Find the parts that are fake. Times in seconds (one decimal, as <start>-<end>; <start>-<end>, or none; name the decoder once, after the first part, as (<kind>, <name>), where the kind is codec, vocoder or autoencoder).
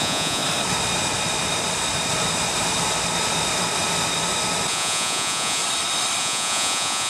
0.0-0.4 (vocoder, Vocos); 4.7-5.6; 6.2-7.1